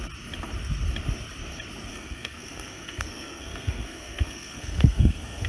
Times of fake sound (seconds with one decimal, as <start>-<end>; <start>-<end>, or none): 1.9-5.5